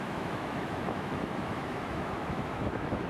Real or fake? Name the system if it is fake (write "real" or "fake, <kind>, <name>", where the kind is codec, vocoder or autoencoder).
fake, autoencoder, DAC-VAE